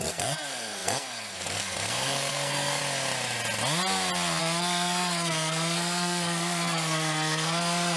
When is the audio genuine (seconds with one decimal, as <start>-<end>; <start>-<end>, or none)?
2.8-4.4